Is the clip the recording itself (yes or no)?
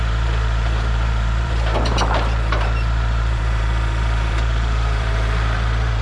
no